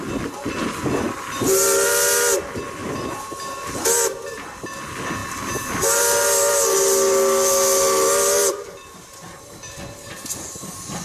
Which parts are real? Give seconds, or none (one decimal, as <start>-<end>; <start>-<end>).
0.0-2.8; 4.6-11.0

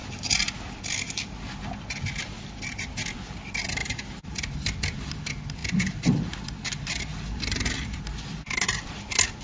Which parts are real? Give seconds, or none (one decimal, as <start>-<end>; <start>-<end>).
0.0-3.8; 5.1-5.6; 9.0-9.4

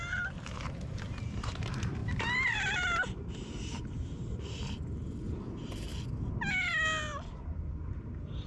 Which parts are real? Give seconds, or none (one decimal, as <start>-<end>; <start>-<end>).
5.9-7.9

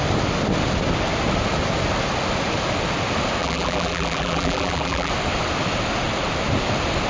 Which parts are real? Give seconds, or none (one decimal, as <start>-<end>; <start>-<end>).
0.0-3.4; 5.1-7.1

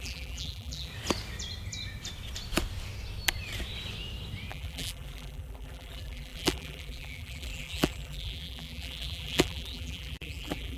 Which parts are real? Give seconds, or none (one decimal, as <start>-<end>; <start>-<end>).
0.9-4.5

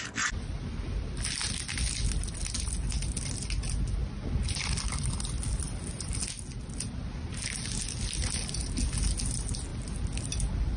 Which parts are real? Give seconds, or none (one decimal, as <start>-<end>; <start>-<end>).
0.0-10.8